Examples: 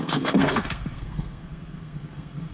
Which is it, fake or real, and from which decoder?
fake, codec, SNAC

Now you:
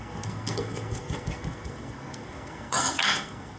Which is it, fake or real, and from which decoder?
fake, codec, SNAC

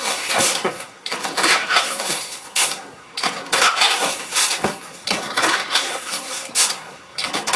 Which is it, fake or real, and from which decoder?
fake, codec, SNAC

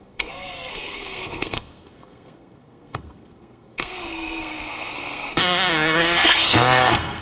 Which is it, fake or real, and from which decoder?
fake, codec, SNAC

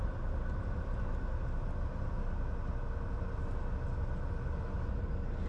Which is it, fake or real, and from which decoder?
real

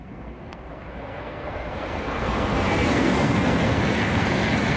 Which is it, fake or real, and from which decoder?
fake, codec, SNAC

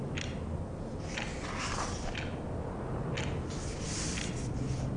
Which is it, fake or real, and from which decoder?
real